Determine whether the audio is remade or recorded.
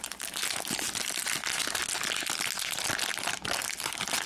recorded